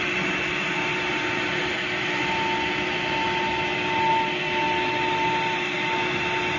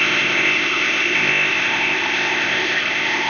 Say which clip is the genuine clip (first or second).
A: first